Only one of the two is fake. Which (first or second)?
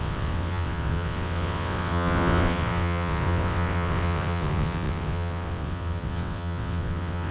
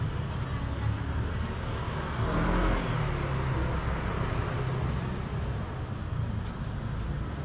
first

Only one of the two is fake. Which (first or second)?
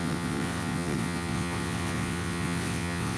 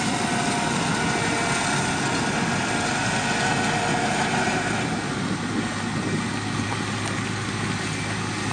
first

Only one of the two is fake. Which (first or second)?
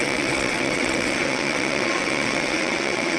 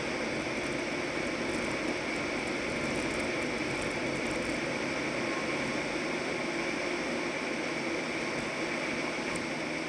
first